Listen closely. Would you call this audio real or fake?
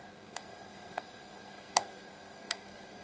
fake